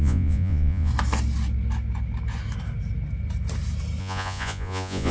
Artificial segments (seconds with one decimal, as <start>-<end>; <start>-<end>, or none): 0.0-0.9; 4.0-5.1